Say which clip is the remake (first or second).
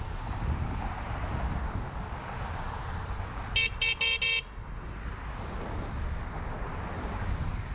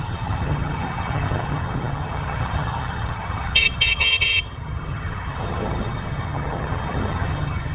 second